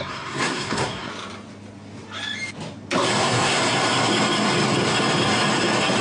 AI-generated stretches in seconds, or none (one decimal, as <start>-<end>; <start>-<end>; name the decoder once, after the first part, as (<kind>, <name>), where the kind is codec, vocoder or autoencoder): 0.0-1.1 (codec, SNAC); 3.2-3.6

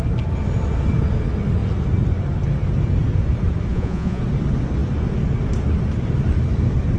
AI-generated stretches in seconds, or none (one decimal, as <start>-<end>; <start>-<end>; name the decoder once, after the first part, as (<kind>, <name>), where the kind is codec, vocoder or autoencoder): 3.7-4.2 (vocoder, Vocos)

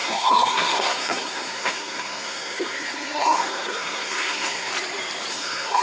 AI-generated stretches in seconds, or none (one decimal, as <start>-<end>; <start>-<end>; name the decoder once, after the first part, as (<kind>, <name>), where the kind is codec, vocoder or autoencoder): 0.0-4.7 (codec, SNAC); 5.3-5.8

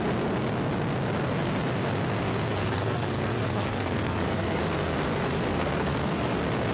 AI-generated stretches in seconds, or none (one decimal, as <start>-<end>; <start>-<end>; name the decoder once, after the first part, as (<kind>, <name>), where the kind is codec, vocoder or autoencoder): 2.6-4.6 (codec, SNAC); 5.5-6.3